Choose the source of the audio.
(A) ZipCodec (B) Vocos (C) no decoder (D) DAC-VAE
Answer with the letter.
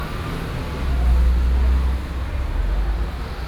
C